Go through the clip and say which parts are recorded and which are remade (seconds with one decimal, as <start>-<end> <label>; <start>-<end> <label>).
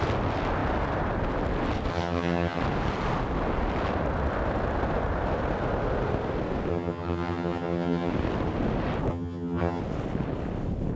0.0-1.9 recorded; 1.9-2.6 remade; 2.6-6.7 recorded; 6.7-8.1 remade; 8.1-9.1 recorded; 9.1-9.8 remade; 9.8-11.0 recorded